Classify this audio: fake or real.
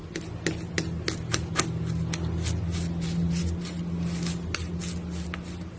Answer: real